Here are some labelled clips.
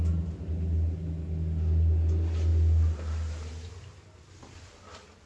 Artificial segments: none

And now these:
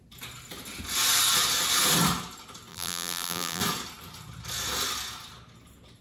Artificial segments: 2.7-3.6

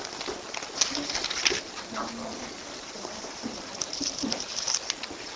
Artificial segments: 2.3-4.4

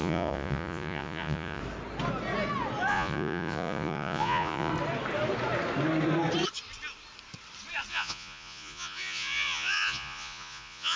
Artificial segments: 0.0-1.6; 2.9-4.7; 7.9-11.0